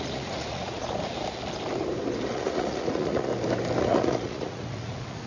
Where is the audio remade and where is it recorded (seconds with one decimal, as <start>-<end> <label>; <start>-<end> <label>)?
0.0-0.8 remade; 0.8-2.3 recorded; 2.3-3.3 remade; 3.3-3.8 recorded; 3.8-5.3 remade